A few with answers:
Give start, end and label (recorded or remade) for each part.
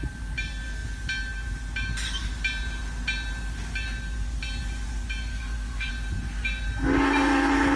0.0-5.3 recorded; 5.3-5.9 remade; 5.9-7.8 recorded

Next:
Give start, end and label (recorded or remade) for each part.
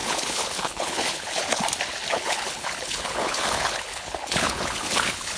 0.0-1.6 remade; 1.6-2.1 recorded; 2.1-5.4 remade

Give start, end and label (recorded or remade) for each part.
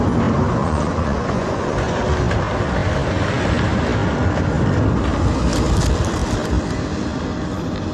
0.0-0.6 recorded; 0.6-2.0 remade; 2.0-7.9 recorded